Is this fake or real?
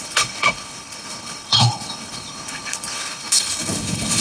fake